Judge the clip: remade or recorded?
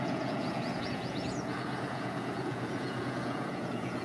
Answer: remade